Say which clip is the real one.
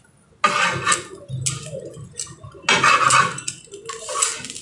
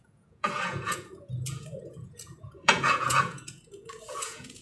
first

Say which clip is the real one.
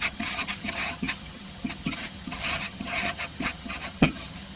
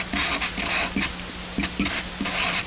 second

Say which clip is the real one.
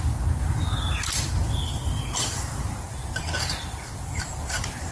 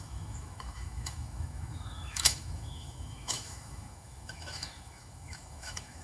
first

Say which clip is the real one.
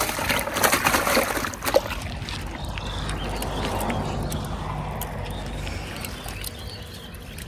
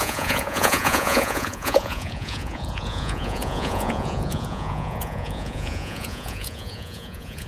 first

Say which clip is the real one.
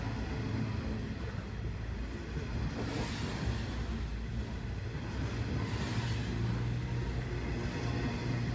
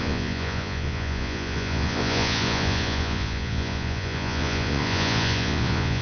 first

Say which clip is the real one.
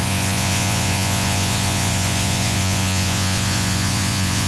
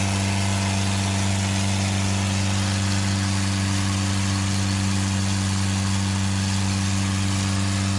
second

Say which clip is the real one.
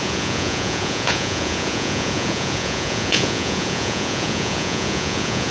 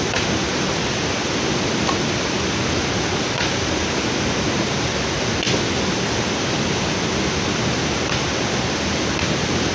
second